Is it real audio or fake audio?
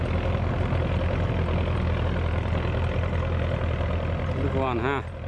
real